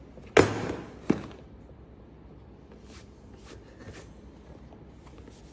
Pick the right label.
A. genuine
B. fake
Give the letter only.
A